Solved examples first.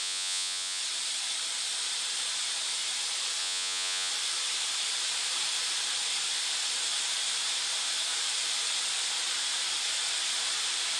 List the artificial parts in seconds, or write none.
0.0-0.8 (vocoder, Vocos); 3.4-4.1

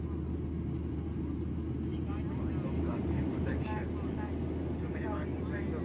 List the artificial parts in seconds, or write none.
1.9-2.5 (vocoder, BigVGAN v2)

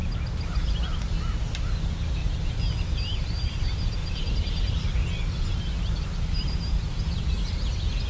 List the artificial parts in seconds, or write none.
2.2-3.6 (vocoder, BigVGAN v2); 4.0-7.3

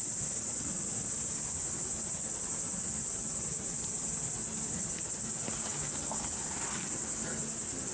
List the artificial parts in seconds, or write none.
none

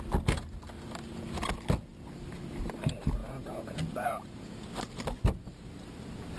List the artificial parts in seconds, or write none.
3.2-4.7 (vocoder, Vocos)

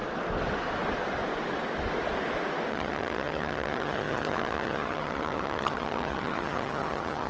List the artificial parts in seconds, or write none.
2.7-7.3 (vocoder, HiFi-GAN)

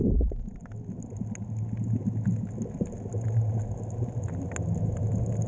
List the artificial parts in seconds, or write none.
none

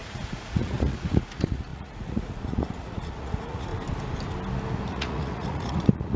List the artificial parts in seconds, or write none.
0.0-3.7 (vocoder, Vocos); 4.9-6.2